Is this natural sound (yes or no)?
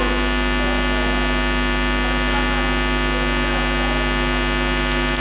yes